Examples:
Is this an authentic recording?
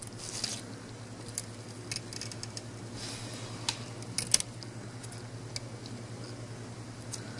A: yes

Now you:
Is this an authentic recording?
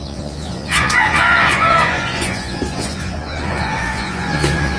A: no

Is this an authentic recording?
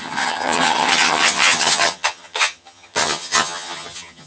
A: no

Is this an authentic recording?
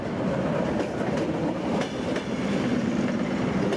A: yes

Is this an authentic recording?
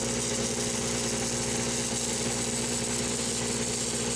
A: yes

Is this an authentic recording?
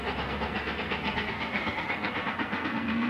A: no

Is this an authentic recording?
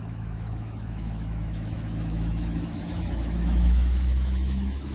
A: no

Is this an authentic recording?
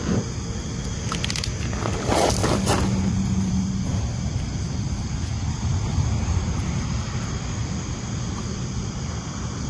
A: no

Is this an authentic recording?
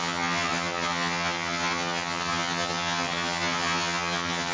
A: no